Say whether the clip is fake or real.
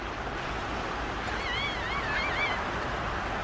real